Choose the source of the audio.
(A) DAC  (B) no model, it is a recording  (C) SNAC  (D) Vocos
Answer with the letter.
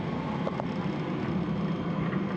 B